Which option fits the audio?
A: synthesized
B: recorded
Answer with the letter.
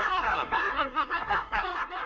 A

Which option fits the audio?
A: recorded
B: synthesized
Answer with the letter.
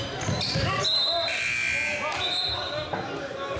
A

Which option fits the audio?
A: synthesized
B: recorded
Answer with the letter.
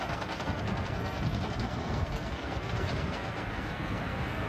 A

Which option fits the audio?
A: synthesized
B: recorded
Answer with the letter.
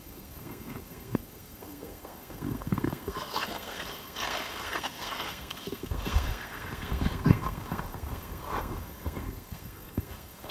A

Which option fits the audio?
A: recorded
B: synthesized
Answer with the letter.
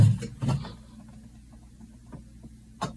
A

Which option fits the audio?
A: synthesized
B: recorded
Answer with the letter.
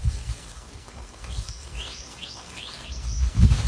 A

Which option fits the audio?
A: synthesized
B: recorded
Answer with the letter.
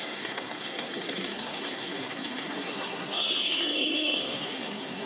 A